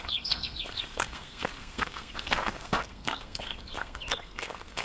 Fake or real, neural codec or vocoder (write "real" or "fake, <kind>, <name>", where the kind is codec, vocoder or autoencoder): fake, codec, SNAC